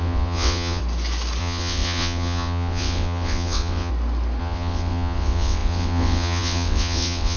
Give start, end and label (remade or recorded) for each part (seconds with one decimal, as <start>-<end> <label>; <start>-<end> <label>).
0.0-0.8 remade; 0.8-1.4 recorded; 1.4-3.9 remade; 3.9-4.4 recorded; 4.4-7.4 remade